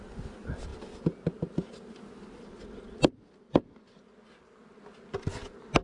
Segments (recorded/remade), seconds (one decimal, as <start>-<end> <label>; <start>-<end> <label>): 0.0-5.8 recorded

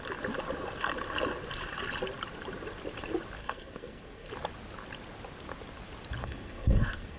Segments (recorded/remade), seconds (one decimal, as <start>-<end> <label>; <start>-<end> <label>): 0.0-3.4 recorded; 3.4-4.3 remade; 4.3-6.2 recorded; 6.2-7.2 remade

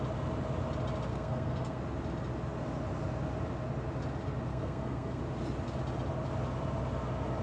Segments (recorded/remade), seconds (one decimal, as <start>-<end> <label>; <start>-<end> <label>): 0.0-1.1 recorded; 1.1-1.8 remade; 1.8-4.5 recorded; 4.5-5.2 remade; 5.2-7.4 recorded